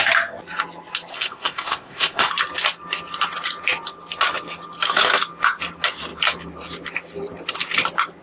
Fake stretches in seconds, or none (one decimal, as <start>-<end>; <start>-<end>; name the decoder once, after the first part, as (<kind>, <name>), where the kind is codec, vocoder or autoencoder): 1.1-2.3 (codec, ZipCodec)